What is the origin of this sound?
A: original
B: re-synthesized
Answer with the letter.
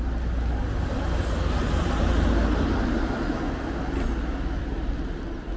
A